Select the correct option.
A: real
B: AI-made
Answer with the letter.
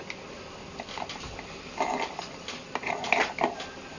A